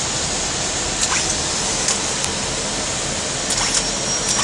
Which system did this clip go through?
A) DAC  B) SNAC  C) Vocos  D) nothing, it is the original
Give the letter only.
D